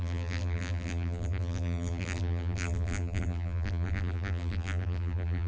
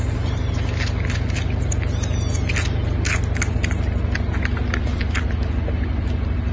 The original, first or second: second